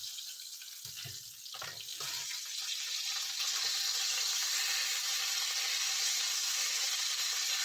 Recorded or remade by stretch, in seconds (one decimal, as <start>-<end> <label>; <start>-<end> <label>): 0.0-7.6 recorded